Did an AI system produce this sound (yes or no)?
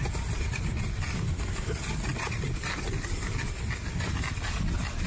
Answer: no